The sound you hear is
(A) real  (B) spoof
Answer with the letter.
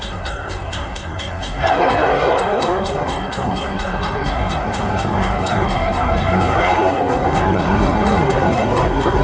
B